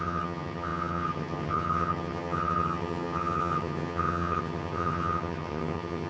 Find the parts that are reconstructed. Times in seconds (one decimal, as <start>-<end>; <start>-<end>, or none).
0.0-6.1